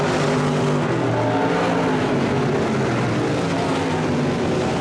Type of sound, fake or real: real